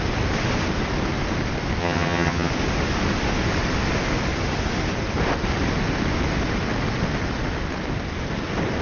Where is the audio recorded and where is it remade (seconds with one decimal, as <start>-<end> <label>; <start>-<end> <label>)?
0.0-1.8 recorded; 1.8-2.5 remade; 2.5-8.8 recorded